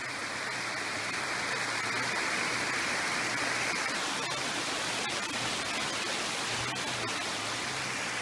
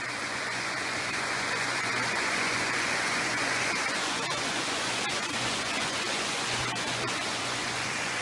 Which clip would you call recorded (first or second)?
first